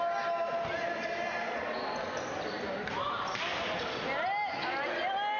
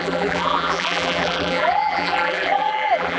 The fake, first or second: second